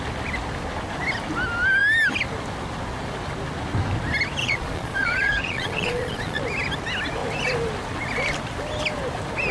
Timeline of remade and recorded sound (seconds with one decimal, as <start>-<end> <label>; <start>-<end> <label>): 0.0-4.4 recorded; 4.4-6.4 remade; 6.4-9.5 recorded